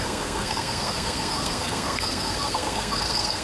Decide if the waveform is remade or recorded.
remade